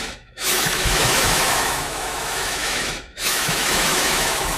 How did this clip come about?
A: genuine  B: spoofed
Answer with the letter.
B